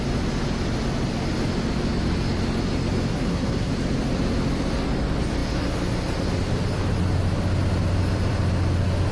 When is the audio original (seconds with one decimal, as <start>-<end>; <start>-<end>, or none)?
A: 0.0-3.1; 3.7-9.1